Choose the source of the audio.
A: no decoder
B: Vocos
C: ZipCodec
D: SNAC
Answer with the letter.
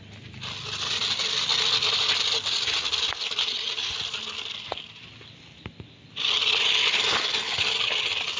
A